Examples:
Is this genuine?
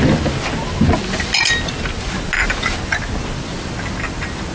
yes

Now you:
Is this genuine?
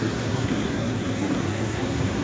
no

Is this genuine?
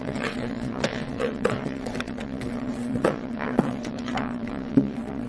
no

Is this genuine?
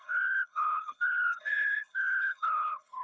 no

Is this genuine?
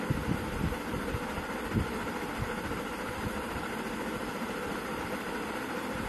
no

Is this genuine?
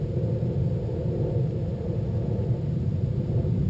yes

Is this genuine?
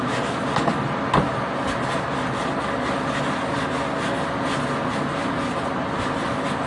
yes